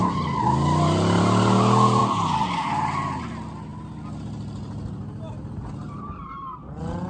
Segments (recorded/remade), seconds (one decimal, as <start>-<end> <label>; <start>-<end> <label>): 0.0-7.1 recorded